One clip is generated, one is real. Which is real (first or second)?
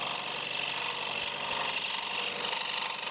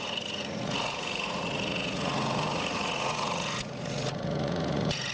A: first